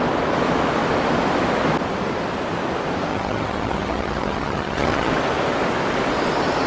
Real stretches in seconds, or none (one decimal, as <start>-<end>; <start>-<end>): 0.0-3.1; 5.1-6.7